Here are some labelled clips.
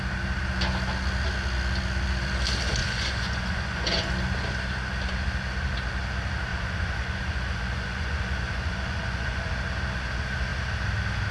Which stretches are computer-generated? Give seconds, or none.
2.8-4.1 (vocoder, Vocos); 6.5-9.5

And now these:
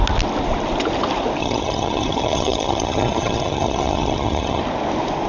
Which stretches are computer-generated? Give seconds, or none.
1.4-4.6 (vocoder, HiFi-GAN)

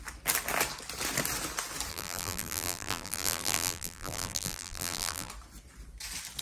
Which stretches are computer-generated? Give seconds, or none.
1.9-5.3 (vocoder, BigVGAN v2)

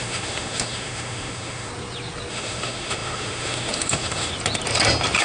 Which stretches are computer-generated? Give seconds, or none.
0.0-1.7 (autoencoder, DAC-VAE); 2.3-4.3

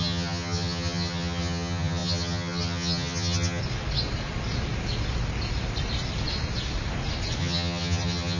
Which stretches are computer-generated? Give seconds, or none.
0.0-3.6 (vocoder, HiFi-GAN); 7.4-8.4